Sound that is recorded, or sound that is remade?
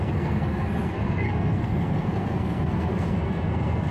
remade